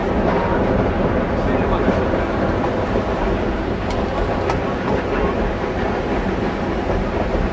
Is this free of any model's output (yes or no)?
yes